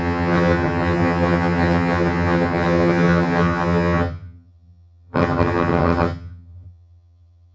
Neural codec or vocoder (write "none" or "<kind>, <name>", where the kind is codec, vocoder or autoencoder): vocoder, HiFi-GAN